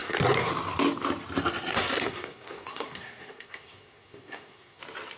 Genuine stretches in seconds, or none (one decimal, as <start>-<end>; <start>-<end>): 0.5-1.7; 4.8-5.2